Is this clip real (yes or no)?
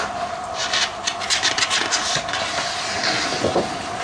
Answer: yes